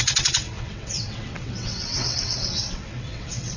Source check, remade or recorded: remade